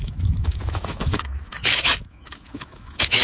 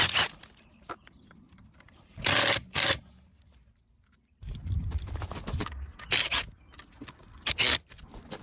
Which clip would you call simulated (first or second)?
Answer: first